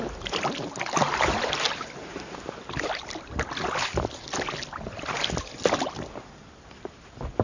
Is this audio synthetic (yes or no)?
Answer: no